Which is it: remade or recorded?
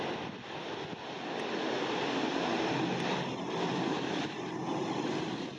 recorded